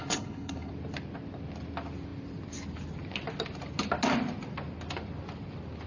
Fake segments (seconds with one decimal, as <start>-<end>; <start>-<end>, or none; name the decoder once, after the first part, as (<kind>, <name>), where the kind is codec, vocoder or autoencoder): 0.0-0.7 (codec, HILCodec)